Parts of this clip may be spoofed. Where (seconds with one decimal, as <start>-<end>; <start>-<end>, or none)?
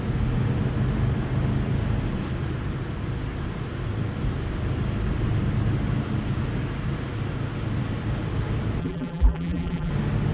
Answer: 8.8-9.9